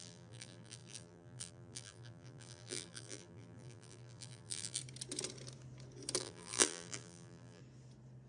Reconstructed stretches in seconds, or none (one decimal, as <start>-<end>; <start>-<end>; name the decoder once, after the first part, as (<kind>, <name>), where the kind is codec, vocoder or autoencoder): 0.0-4.8 (vocoder, BigVGAN v2); 6.2-7.6